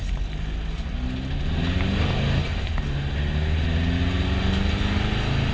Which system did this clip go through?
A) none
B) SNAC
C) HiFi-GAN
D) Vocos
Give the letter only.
A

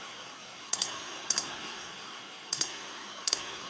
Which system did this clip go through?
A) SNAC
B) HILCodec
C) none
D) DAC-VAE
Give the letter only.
A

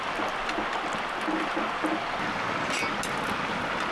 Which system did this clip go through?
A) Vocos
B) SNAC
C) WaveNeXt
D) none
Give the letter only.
D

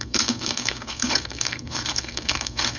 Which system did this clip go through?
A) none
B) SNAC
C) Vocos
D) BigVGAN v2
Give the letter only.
B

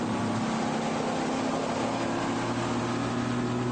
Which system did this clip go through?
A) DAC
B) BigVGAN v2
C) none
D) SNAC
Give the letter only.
C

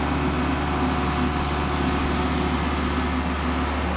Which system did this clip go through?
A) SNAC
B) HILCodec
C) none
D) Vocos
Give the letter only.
C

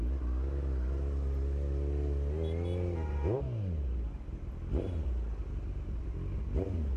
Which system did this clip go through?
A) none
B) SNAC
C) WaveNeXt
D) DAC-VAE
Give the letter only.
A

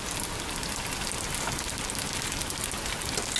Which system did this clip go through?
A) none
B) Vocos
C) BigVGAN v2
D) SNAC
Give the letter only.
A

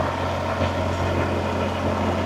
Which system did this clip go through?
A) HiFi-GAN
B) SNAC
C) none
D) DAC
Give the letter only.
C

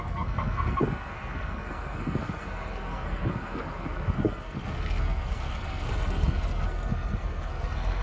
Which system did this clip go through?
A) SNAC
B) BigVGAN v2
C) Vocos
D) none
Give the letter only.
A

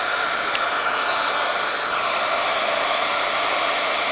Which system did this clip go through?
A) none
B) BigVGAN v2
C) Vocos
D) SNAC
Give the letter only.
A